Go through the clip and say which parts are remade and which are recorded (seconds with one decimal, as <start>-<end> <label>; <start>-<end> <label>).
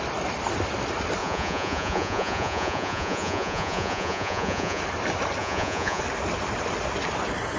0.0-1.2 recorded; 1.2-4.8 remade; 4.8-5.4 recorded; 5.4-6.0 remade; 6.0-7.6 recorded